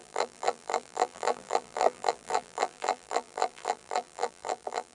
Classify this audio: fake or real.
fake